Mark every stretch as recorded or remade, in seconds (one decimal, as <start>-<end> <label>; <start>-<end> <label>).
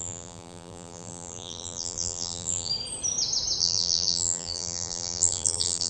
0.0-2.7 remade; 2.7-3.6 recorded; 3.6-5.9 remade